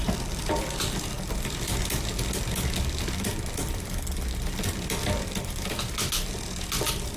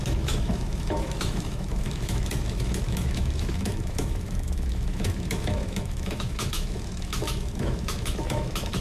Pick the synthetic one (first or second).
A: second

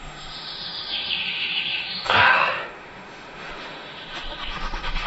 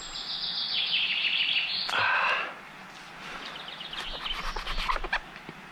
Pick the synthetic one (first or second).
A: first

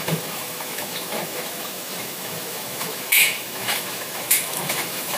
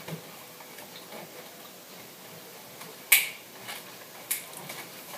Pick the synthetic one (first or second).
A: first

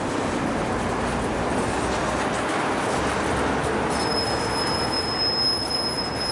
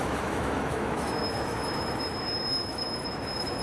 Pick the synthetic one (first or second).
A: second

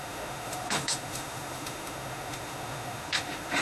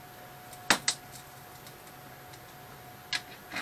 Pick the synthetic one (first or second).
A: first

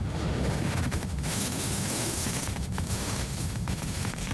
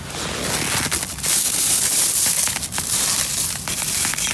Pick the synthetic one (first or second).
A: first